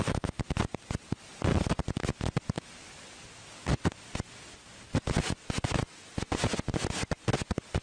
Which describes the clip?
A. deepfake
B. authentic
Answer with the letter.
B